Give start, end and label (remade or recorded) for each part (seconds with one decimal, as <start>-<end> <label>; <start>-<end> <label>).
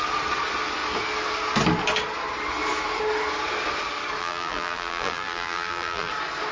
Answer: 0.0-4.2 recorded; 4.2-6.1 remade; 6.1-6.5 recorded